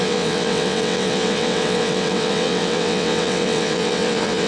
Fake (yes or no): yes